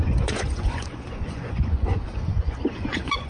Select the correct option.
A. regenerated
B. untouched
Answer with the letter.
A